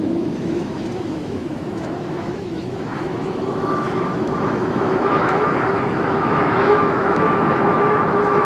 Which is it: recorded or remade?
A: remade